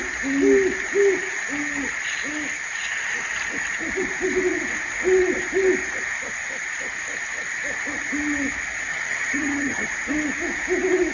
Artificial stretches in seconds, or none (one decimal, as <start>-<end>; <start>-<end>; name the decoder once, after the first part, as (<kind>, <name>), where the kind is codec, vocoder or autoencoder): 8.9-9.9 (vocoder, HiFi-GAN)